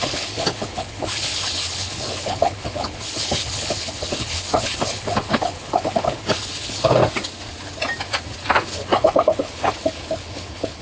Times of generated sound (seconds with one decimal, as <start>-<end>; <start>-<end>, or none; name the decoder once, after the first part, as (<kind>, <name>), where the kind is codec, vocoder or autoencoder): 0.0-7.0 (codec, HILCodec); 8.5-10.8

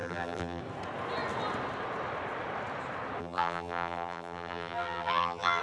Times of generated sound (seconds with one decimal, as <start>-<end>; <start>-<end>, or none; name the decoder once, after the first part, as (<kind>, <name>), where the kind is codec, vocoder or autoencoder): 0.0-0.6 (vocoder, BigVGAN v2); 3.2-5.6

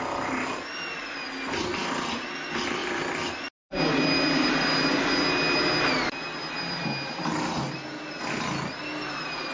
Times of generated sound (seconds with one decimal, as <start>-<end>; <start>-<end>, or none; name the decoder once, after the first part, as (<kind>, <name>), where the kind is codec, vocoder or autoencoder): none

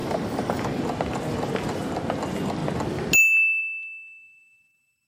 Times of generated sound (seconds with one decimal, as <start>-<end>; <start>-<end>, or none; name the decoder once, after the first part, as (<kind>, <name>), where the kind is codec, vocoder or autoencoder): 0.0-0.8 (codec, DAC)

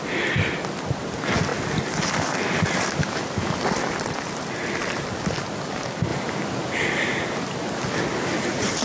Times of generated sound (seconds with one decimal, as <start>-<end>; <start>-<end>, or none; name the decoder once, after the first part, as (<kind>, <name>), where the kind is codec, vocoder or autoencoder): none

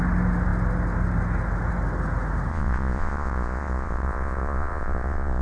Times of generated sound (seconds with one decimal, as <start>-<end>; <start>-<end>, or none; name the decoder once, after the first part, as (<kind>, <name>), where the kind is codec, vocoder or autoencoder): 2.5-5.4 (vocoder, Vocos)